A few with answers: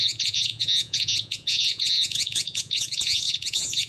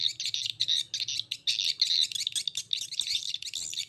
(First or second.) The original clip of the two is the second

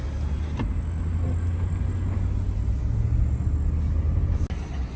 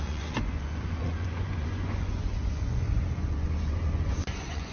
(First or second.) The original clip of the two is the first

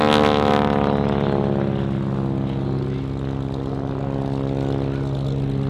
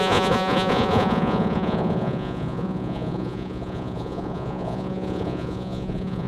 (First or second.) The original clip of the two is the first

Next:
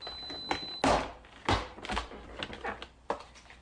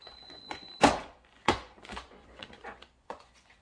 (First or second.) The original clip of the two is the first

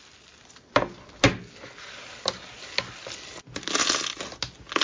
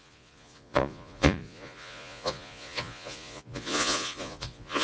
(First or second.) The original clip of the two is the first